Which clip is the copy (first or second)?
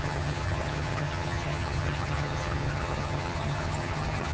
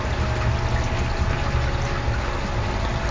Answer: first